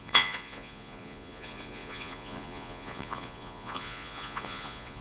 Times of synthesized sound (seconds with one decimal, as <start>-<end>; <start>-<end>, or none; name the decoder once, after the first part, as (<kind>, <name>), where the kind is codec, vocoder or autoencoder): 0.0-5.0 (vocoder, Vocos)